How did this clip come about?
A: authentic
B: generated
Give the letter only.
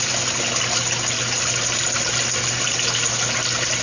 A